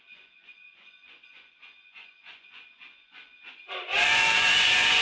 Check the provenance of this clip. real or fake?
fake